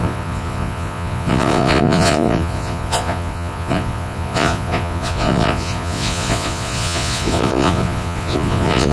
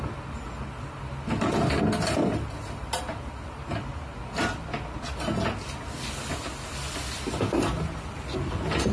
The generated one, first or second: first